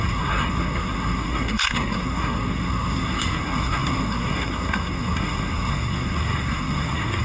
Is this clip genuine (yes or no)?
no